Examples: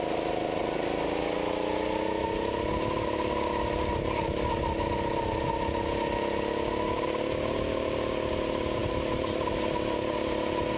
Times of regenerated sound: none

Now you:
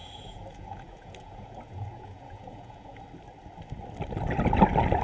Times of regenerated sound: 0.0-3.0 (vocoder, Vocos)

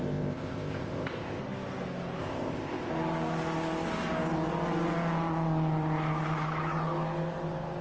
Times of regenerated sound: 0.0-1.4 (codec, ZipCodec); 2.2-2.9

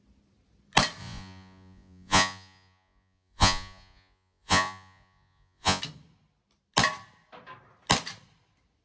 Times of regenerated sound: 1.0-5.8 (vocoder, Vocos)